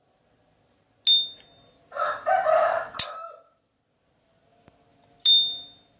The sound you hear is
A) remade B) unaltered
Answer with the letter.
B